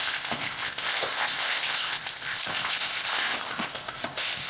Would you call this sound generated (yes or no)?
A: yes